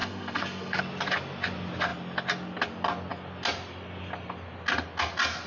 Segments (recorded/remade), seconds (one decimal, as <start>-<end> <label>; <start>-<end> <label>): 0.0-0.8 remade; 0.8-5.5 recorded